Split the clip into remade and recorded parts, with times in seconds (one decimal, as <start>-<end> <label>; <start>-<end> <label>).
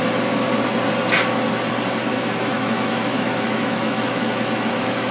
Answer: 0.0-2.1 recorded; 2.1-5.1 remade